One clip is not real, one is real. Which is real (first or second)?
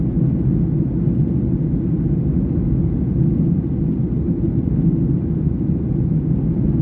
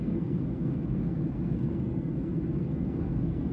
first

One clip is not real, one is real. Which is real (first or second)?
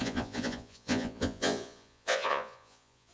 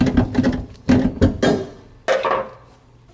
second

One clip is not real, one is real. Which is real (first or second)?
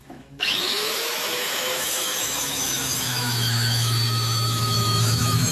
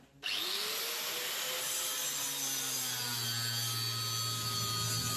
second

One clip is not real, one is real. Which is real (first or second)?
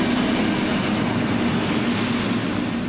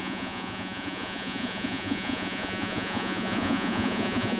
first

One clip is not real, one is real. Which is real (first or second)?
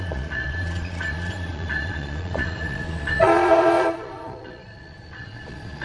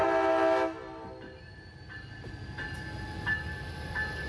second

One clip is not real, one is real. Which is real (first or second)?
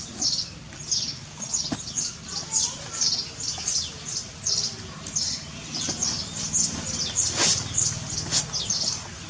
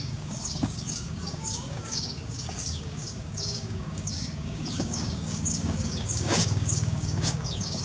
first